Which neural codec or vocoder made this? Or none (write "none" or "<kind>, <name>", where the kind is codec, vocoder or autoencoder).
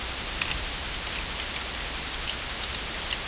none